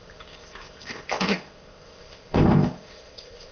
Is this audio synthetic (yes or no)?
yes